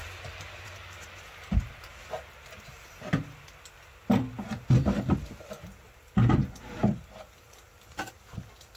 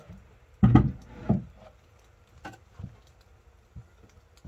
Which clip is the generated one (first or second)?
first